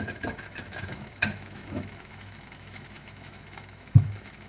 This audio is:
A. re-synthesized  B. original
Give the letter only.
A